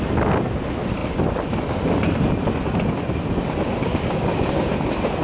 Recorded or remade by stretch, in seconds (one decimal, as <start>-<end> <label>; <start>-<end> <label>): 0.0-3.9 recorded; 3.9-4.7 remade; 4.7-5.2 recorded